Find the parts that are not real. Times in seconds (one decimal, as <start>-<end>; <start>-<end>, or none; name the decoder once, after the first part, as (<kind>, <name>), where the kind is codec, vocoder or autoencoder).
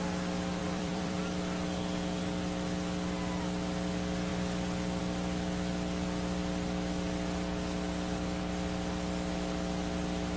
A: 0.6-1.2 (vocoder, BigVGAN v2)